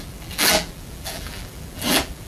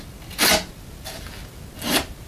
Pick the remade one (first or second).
first